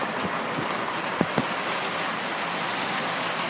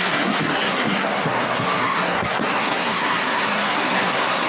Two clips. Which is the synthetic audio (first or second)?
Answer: second